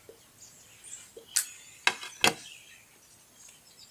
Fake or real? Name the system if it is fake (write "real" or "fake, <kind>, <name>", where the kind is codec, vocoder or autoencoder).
real